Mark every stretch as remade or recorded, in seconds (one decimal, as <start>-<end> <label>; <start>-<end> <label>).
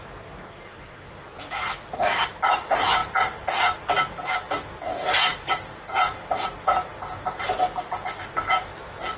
0.0-9.2 recorded